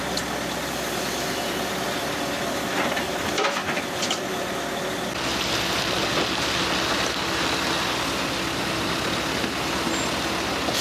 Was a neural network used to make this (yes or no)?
no